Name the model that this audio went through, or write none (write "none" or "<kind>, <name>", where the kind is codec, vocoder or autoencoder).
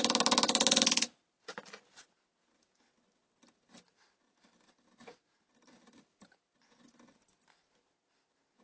none